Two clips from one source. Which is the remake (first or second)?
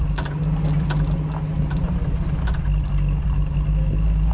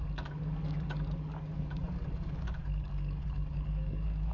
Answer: second